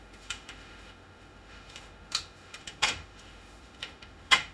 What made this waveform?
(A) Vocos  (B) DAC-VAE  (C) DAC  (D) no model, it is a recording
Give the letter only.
B